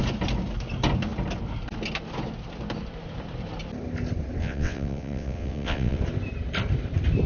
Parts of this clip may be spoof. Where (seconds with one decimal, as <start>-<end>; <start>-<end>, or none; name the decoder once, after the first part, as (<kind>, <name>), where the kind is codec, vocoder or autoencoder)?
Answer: 4.4-6.0 (vocoder, WaveNeXt)